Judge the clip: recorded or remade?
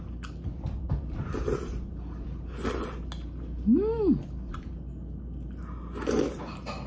recorded